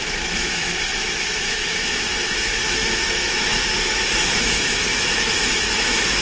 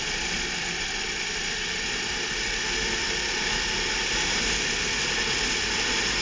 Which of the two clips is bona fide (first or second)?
second